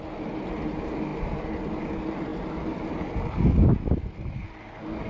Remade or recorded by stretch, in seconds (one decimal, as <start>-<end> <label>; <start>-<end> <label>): 0.0-5.1 recorded

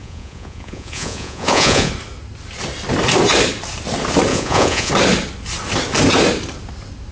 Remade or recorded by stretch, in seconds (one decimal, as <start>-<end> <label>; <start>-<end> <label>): 0.0-1.9 remade; 1.9-4.3 recorded; 4.3-4.9 remade; 4.9-7.1 recorded

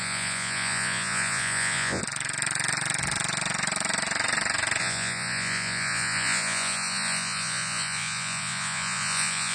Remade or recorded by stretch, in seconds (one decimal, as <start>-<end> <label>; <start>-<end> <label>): 0.0-2.0 remade; 2.0-4.8 recorded; 4.8-9.5 remade

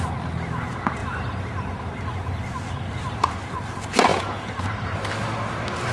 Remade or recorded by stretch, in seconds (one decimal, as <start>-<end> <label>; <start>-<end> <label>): 0.0-4.1 recorded; 4.1-4.6 remade; 4.6-5.9 recorded